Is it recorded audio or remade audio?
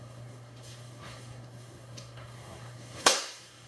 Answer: remade